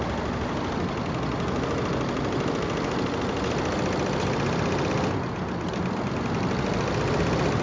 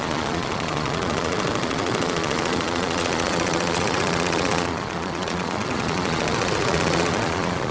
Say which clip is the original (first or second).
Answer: first